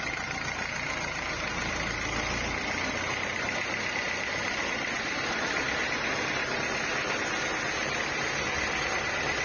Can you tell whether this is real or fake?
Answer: real